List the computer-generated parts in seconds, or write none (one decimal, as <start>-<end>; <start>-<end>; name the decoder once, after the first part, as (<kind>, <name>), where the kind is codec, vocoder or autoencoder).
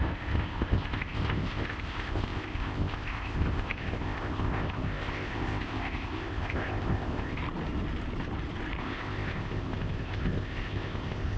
0.0-7.4 (codec, ZipCodec); 8.8-11.4